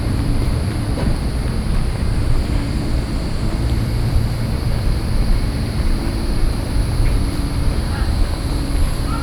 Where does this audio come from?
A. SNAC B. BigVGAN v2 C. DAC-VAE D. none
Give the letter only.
B